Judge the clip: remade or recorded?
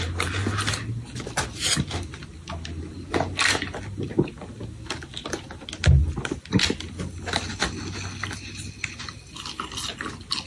recorded